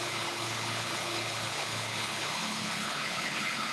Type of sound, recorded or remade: remade